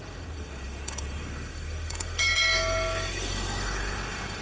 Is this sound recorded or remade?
remade